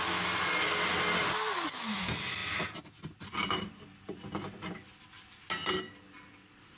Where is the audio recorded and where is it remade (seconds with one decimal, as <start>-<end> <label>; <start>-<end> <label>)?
0.0-6.8 recorded